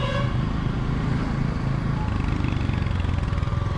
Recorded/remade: recorded